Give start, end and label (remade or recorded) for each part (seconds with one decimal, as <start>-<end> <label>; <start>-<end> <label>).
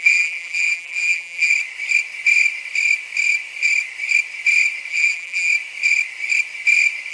0.0-1.5 remade; 1.5-4.9 recorded; 4.9-5.5 remade; 5.5-7.1 recorded